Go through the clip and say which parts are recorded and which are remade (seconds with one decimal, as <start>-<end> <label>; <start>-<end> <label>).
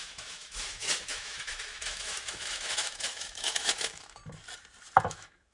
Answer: 0.0-4.2 remade; 4.2-5.1 recorded; 5.1-5.5 remade